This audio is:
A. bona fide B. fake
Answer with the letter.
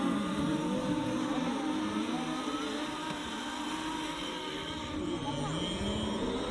A